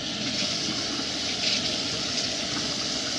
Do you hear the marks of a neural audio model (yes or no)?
yes